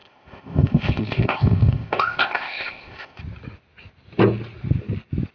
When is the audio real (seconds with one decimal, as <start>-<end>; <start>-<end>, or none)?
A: 3.2-5.3